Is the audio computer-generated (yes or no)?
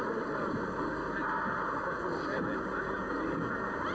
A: no